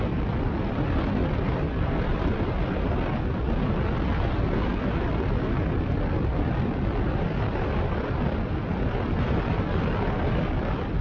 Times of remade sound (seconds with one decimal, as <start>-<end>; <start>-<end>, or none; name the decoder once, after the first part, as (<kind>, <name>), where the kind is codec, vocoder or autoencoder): none